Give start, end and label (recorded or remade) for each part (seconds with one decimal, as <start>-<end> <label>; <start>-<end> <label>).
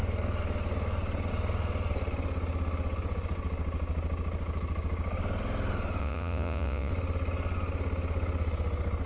0.0-6.0 recorded; 6.0-6.9 remade; 6.9-9.1 recorded